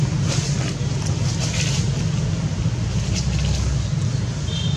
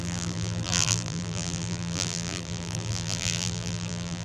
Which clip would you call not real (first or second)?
second